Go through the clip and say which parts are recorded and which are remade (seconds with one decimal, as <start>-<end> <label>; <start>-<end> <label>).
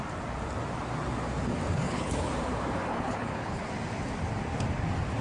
0.0-1.8 recorded; 1.8-2.3 remade; 2.3-2.9 recorded; 2.9-3.6 remade; 3.6-5.2 recorded